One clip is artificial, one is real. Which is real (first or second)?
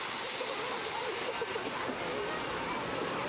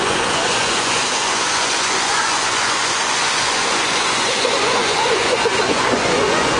first